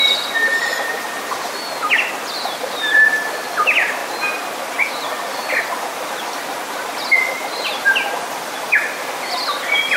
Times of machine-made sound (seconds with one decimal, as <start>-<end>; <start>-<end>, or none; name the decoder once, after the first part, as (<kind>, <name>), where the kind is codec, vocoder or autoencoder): none